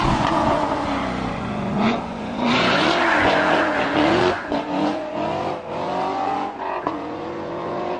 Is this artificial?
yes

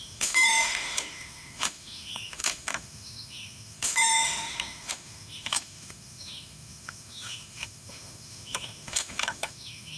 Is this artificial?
yes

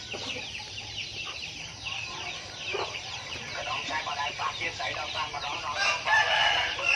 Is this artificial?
yes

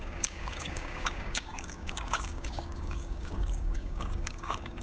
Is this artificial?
yes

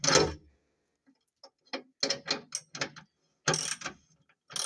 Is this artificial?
no